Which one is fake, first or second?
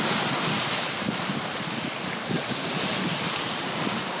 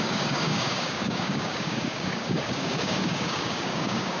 second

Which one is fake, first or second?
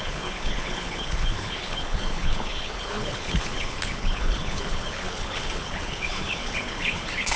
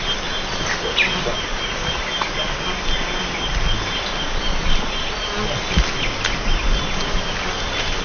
first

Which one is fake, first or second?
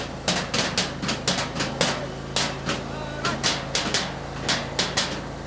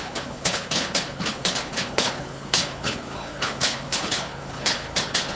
second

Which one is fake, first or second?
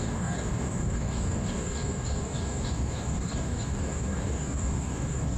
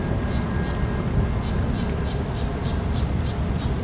first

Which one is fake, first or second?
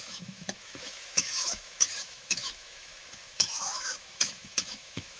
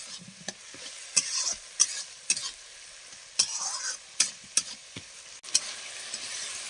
first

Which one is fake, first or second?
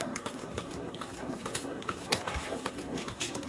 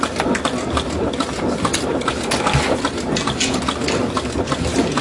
first